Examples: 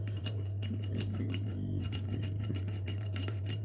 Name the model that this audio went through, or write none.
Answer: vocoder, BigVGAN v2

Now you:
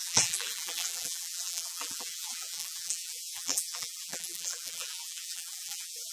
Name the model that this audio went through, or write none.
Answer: vocoder, BigVGAN v2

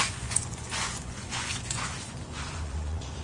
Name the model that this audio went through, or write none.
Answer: vocoder, Vocos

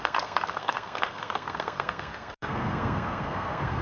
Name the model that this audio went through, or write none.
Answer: codec, SNAC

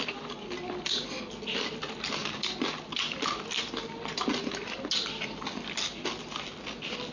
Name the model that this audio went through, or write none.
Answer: none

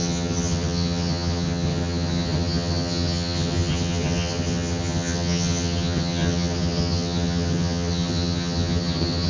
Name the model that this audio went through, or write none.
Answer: vocoder, HiFi-GAN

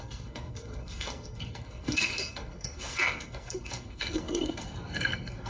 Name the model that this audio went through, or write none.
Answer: codec, SNAC